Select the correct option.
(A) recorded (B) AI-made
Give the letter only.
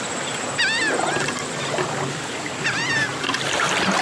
A